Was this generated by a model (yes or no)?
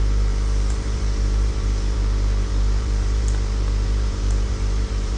yes